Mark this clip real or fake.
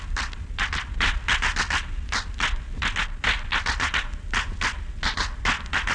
real